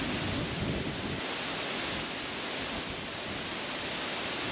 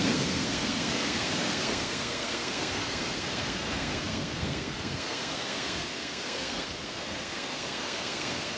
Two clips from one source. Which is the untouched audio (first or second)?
first